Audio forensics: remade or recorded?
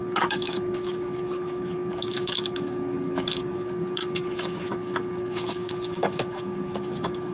remade